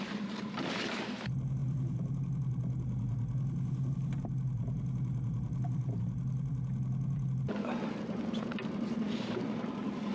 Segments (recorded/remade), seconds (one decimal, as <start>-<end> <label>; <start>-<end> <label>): 0.0-10.1 recorded